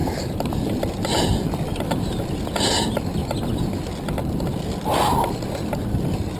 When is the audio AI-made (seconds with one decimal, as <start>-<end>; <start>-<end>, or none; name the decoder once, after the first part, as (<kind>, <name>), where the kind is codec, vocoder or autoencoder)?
0.0-0.9 (vocoder, BigVGAN v2); 1.7-2.2; 3.2-3.8